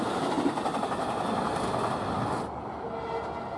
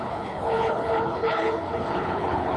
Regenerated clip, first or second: second